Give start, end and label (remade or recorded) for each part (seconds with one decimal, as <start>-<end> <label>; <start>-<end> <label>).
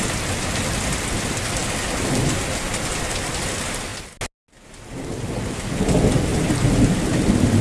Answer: 0.0-7.6 recorded